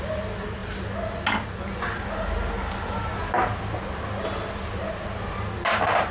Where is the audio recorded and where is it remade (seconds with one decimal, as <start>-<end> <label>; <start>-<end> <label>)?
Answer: 0.0-6.1 recorded